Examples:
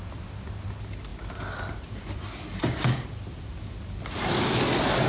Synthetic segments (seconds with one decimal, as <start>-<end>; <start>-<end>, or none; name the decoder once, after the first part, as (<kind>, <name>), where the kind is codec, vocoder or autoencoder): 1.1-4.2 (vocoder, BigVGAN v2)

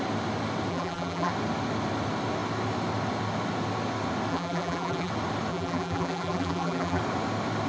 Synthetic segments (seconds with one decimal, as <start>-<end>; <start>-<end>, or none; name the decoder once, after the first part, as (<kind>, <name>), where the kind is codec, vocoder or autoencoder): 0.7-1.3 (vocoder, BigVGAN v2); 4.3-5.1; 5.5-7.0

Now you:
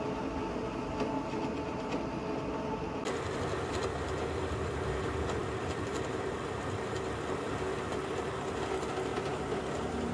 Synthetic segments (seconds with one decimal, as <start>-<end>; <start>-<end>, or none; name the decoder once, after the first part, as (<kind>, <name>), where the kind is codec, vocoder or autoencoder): 2.4-4.2 (vocoder, BigVGAN v2); 5.4-5.9; 9.1-9.6

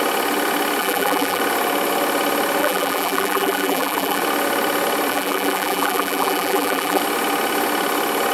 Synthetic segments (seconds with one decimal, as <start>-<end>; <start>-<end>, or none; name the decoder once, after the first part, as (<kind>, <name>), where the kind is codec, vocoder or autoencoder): 0.8-1.4 (vocoder, BigVGAN v2); 2.6-4.2; 5.1-7.0

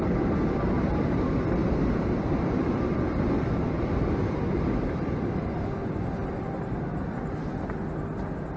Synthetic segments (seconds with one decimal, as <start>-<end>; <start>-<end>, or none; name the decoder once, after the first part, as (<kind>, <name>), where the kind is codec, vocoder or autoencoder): 1.6-4.4 (vocoder, BigVGAN v2); 6.2-7.2

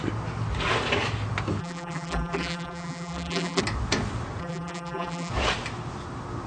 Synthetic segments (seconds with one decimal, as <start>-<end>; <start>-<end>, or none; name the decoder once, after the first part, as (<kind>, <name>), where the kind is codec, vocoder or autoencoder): 1.6-3.6 (vocoder, BigVGAN v2); 4.4-5.3